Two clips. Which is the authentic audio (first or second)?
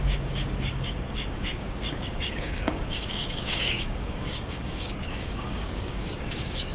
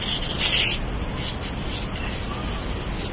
second